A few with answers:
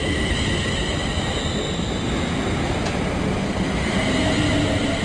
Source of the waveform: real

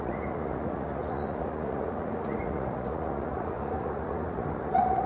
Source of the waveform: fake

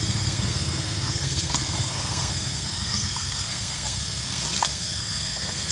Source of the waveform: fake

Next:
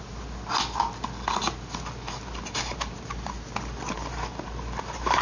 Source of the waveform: real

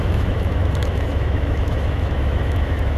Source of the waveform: fake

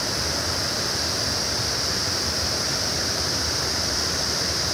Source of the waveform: real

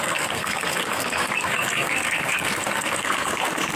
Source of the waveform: fake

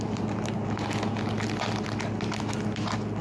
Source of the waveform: real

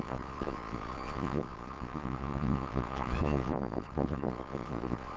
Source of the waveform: fake